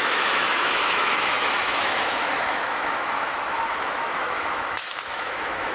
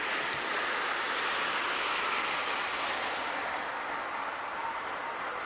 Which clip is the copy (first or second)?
first